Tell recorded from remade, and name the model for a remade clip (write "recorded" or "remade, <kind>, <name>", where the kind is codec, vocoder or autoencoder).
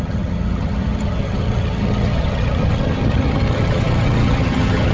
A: remade, vocoder, HiFi-GAN